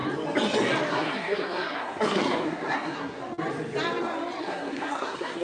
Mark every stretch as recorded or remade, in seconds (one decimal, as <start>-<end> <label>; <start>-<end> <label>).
0.0-0.9 recorded; 0.9-3.2 remade; 3.2-4.4 recorded; 4.4-5.4 remade